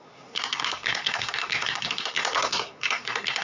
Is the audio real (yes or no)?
no